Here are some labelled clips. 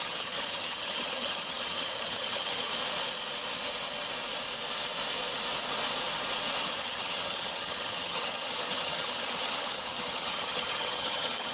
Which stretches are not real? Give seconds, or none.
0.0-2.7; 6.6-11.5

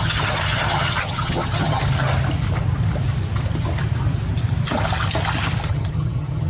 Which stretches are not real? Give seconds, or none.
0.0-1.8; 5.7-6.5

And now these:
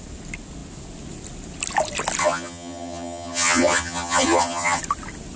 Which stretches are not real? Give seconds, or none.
2.2-4.8